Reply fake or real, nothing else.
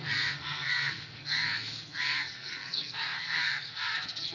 fake